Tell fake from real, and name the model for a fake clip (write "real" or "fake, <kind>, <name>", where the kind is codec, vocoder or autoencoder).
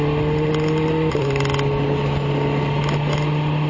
real